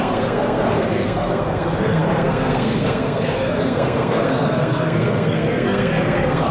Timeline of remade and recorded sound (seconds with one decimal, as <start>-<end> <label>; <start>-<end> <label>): 0.0-6.5 remade